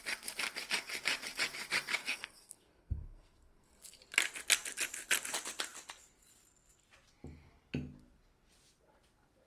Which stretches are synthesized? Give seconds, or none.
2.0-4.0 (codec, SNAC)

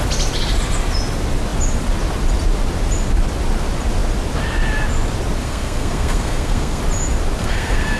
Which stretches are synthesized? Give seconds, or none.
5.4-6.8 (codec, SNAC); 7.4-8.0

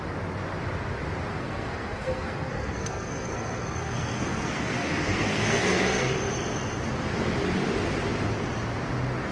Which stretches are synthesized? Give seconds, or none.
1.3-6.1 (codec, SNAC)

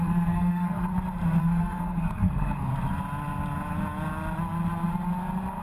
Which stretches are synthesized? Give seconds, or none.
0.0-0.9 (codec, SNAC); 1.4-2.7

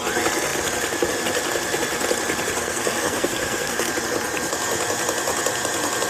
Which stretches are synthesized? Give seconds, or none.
2.6-3.9 (codec, SNAC)

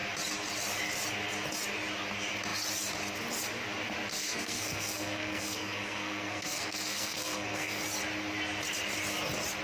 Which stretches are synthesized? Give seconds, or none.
4.1-7.8 (codec, SNAC)